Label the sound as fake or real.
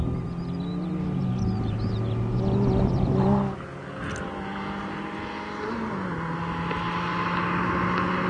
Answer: real